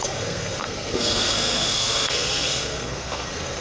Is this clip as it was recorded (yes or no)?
no